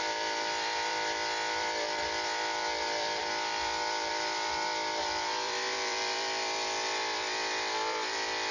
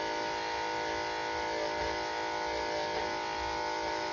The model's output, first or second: first